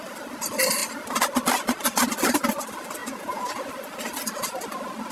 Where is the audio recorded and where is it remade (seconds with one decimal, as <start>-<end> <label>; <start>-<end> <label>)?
0.0-3.0 recorded; 3.0-3.7 remade; 3.7-5.1 recorded